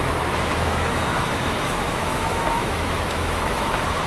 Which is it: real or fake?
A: fake